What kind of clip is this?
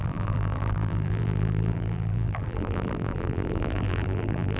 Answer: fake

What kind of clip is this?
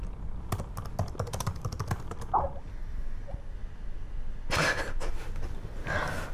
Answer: real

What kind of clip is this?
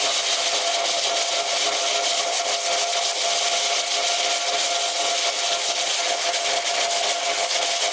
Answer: real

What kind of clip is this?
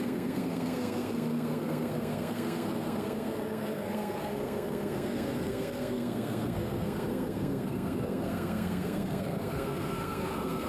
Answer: fake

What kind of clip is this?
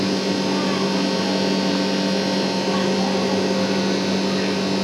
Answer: real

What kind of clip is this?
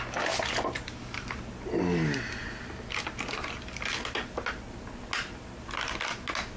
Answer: real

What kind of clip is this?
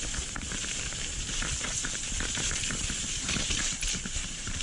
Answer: fake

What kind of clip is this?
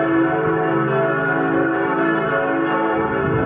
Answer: real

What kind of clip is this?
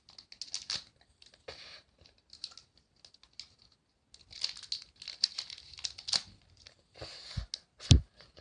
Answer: real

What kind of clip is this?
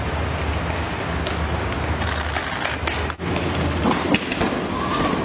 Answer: real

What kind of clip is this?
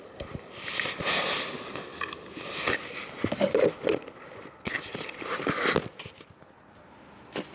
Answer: real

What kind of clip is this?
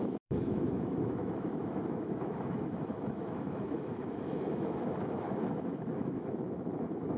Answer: fake